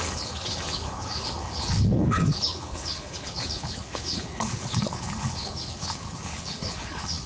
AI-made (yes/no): yes